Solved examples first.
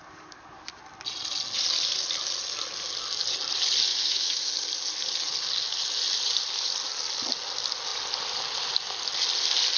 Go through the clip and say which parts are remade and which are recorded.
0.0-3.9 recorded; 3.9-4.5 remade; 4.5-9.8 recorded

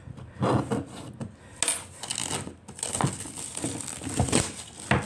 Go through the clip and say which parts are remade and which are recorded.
0.0-5.1 recorded

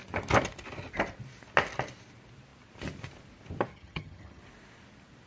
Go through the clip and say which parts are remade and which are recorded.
0.0-3.7 recorded; 3.7-4.4 remade; 4.4-5.3 recorded

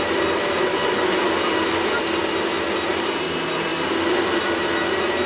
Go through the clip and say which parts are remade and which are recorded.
0.0-5.3 recorded

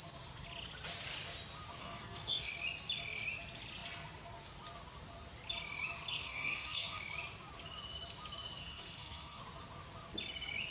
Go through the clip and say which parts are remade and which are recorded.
0.0-1.8 recorded; 1.8-2.5 remade; 2.5-6.1 recorded; 6.1-7.0 remade; 7.0-8.6 recorded; 8.6-9.4 remade; 9.4-10.7 recorded

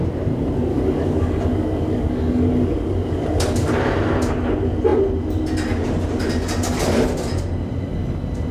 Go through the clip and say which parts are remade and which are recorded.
0.0-0.7 recorded; 0.7-3.7 remade; 3.7-8.5 recorded

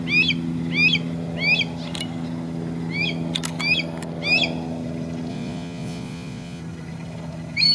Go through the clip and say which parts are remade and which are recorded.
0.0-5.3 recorded; 5.3-6.6 remade; 6.6-7.7 recorded